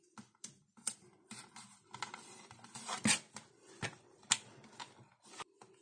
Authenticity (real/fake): real